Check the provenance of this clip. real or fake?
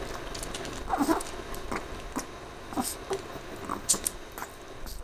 real